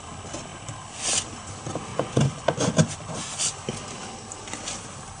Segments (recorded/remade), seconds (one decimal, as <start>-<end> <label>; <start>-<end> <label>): 0.0-1.9 recorded; 1.9-2.7 remade; 2.7-5.2 recorded